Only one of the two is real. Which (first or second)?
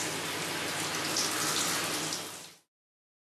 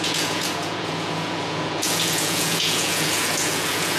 first